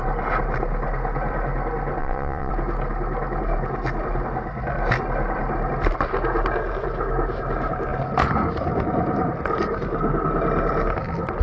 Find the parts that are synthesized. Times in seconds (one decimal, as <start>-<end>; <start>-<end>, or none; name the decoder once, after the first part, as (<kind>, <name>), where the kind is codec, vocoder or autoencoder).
2.0-2.5 (vocoder, WaveNeXt)